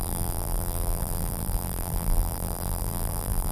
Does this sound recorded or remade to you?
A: remade